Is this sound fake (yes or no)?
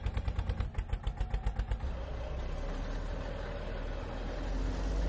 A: no